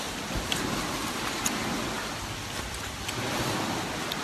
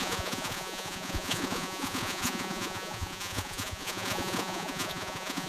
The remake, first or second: second